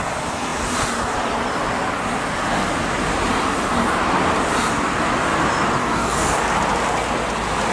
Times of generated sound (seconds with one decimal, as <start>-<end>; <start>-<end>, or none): 5.8-6.4